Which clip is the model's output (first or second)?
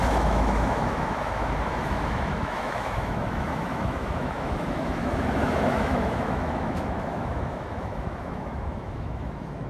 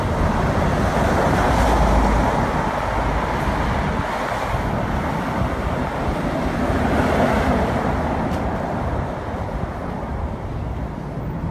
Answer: first